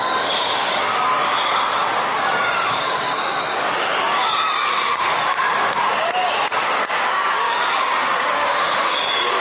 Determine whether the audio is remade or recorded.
remade